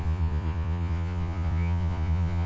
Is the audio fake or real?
fake